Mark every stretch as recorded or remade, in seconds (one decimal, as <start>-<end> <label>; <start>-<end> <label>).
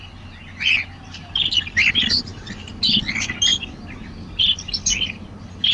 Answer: 0.0-5.7 recorded